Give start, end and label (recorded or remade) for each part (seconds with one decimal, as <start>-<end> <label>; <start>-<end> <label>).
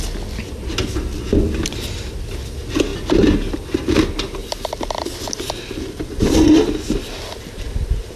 0.0-4.4 recorded; 4.4-8.2 remade